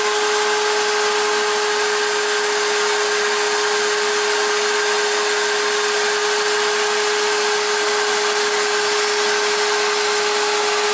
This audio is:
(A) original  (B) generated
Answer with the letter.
A